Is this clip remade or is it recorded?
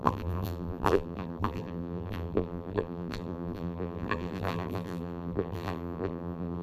remade